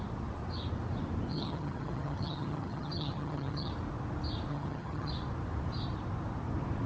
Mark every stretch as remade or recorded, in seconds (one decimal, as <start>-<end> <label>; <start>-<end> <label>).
0.0-1.3 recorded; 1.3-3.7 remade; 3.7-4.5 recorded; 4.5-5.1 remade; 5.1-6.9 recorded